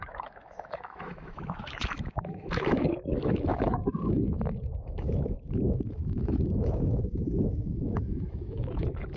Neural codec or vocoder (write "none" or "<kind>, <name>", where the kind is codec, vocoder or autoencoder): autoencoder, DAC-VAE